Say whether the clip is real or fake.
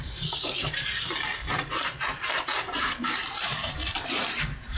fake